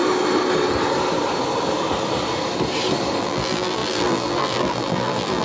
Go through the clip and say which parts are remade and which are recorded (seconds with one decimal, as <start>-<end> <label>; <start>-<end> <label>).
0.0-3.2 recorded; 3.2-5.4 remade